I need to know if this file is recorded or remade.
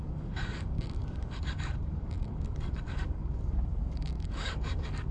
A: remade